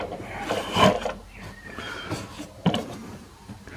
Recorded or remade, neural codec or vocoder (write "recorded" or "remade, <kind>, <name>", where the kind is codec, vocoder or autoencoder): remade, vocoder, BigVGAN v2